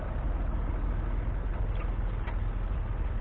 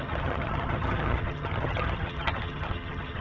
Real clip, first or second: first